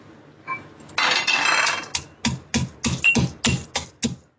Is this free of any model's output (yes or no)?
yes